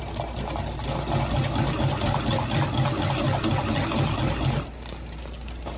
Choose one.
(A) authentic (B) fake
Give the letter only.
A